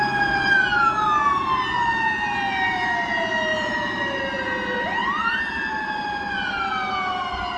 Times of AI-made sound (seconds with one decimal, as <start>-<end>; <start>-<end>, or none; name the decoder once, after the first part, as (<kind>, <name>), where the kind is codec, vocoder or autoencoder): 3.5-4.2 (vocoder, BigVGAN v2); 5.0-5.5